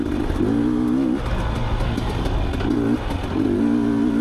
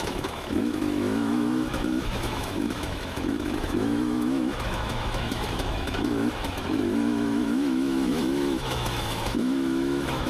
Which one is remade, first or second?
second